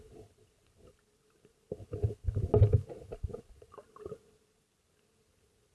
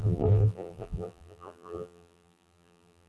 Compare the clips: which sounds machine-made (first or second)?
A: second